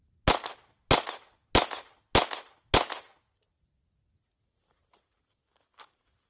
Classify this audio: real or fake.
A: real